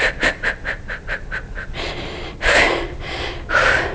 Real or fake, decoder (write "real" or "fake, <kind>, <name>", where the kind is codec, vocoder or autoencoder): real